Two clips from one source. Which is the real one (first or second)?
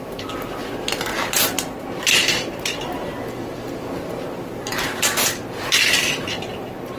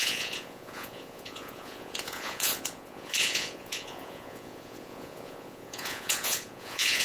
first